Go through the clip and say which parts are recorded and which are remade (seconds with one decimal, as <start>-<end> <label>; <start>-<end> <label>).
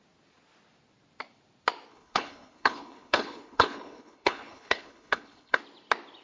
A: 0.0-1.9 recorded; 1.9-5.6 remade; 5.6-6.2 recorded